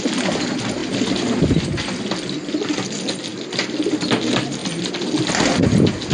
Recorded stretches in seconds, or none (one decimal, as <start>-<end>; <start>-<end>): 0.0-6.1